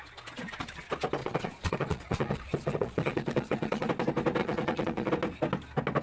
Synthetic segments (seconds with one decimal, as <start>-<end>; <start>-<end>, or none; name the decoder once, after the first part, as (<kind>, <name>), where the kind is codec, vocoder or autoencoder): 1.2-3.9 (vocoder, Vocos); 4.4-5.1